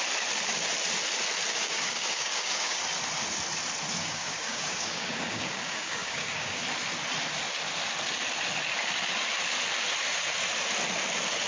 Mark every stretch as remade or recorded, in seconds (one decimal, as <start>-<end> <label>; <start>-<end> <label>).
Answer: 0.0-1.5 recorded; 1.5-2.8 remade; 2.8-4.0 recorded; 4.0-6.6 remade; 6.6-11.5 recorded